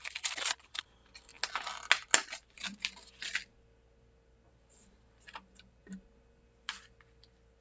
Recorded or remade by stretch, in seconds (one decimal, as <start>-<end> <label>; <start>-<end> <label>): 0.0-1.3 remade; 1.3-4.5 recorded; 4.5-5.8 remade; 5.8-6.3 recorded; 6.3-7.6 remade